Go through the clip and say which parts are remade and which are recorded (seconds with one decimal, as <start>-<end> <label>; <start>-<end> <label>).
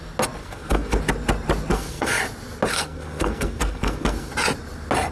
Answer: 0.0-0.4 recorded; 0.4-1.0 remade; 1.0-1.7 recorded; 1.7-2.2 remade; 2.2-2.7 recorded; 2.7-4.3 remade; 4.3-5.1 recorded